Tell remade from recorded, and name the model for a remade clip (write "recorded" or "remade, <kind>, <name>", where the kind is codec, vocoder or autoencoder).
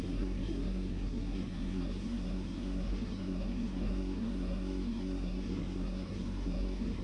remade, codec, SNAC